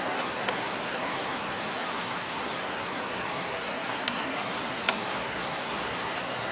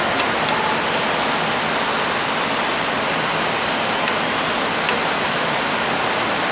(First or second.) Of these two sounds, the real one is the second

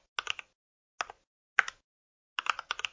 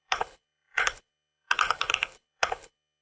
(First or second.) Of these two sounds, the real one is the first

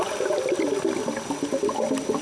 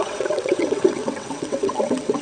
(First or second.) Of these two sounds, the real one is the first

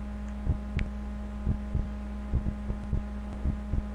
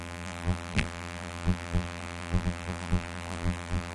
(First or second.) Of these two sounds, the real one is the first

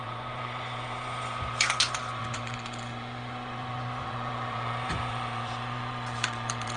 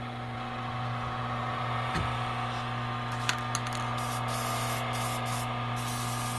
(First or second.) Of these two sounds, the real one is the second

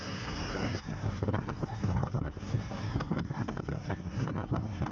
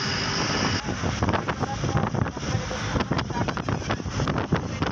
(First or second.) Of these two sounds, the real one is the second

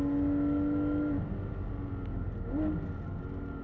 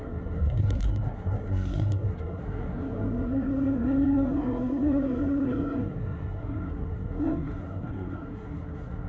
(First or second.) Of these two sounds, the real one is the first